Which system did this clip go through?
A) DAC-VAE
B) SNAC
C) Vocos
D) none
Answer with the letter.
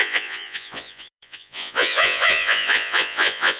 C